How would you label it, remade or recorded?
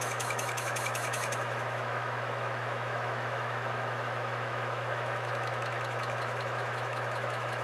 remade